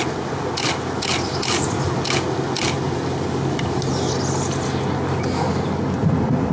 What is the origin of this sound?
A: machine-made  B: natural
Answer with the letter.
B